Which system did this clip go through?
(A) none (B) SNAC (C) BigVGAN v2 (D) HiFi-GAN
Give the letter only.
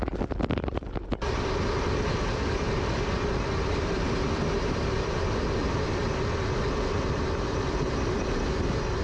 A